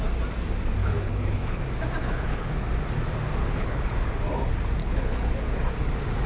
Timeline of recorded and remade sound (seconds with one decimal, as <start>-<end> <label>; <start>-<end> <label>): 0.0-0.8 recorded; 0.8-1.6 remade; 1.6-2.0 recorded; 2.0-2.5 remade; 2.5-3.4 recorded; 3.4-4.1 remade; 4.1-4.8 recorded; 4.8-5.3 remade; 5.3-6.3 recorded